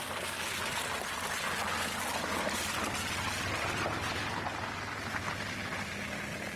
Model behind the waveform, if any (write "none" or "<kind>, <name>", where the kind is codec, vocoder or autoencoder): none